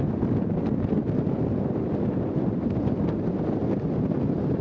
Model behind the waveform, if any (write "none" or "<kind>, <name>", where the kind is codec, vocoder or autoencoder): none